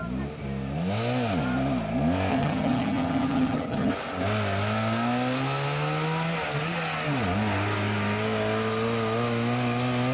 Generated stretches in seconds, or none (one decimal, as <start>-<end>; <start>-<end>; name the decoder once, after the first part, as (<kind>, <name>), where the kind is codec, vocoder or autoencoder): 2.3-3.9 (vocoder, HiFi-GAN)